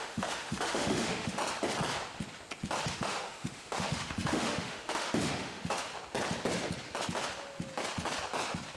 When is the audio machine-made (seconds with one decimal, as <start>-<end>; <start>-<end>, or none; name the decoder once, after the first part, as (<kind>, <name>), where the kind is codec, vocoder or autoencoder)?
0.0-1.4 (autoencoder, DAC-VAE); 2.9-5.9